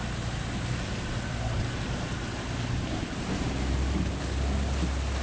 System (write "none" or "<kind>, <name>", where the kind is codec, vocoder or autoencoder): none